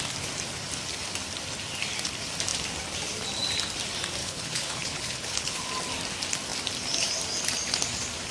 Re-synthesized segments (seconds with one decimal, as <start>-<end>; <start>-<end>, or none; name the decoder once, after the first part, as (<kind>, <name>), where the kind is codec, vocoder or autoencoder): 4.2-5.7 (codec, HILCodec)